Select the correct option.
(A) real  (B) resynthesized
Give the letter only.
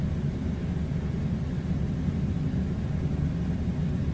A